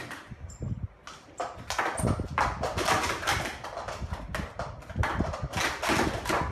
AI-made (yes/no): no